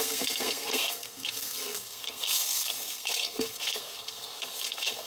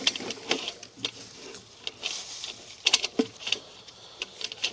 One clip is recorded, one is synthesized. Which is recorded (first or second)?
second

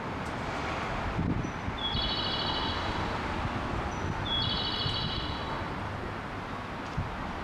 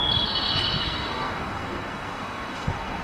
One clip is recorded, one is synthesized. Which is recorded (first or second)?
first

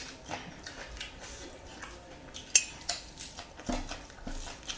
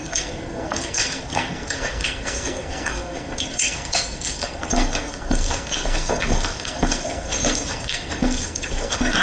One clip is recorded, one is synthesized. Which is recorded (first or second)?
first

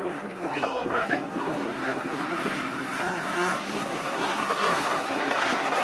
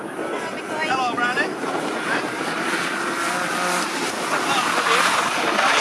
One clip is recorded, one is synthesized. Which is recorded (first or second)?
second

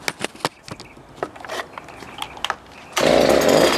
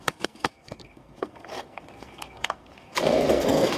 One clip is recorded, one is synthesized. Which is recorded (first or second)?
first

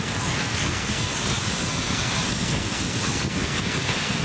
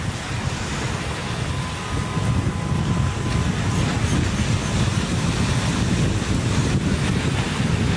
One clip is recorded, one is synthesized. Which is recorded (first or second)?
second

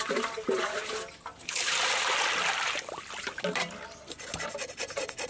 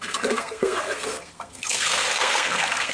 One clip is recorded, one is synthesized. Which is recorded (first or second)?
first